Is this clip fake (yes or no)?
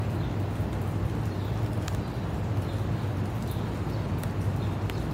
no